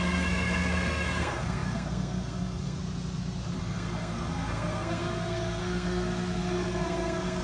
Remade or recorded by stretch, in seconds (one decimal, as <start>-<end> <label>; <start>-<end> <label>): 0.0-2.8 remade; 2.8-3.6 recorded; 3.6-7.4 remade